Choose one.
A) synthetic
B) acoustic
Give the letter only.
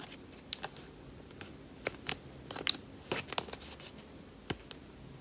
B